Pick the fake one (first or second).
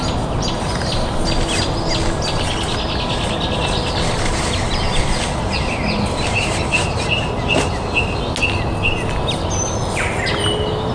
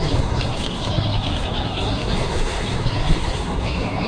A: second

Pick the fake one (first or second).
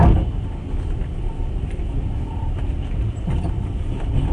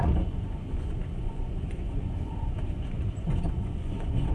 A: second